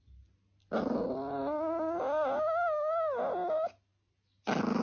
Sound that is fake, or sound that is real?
real